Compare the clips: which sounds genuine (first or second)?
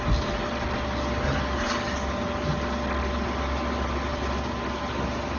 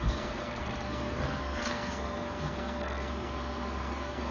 first